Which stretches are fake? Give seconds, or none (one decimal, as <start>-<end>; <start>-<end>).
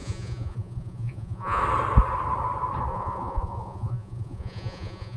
0.0-1.6; 2.9-5.2